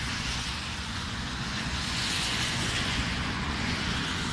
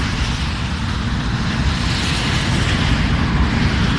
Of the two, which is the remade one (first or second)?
first